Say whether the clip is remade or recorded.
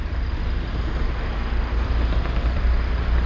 recorded